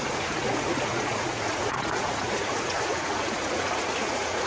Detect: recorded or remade remade